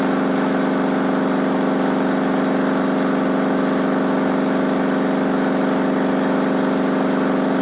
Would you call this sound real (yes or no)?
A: yes